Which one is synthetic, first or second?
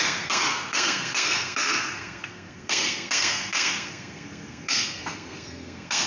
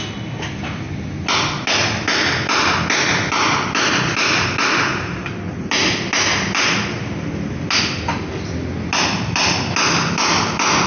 first